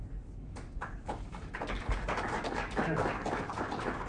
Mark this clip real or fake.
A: fake